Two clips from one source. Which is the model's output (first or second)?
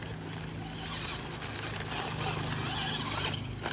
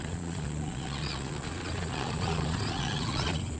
second